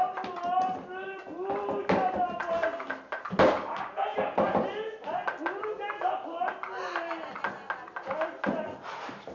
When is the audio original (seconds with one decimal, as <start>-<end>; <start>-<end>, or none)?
0.0-9.3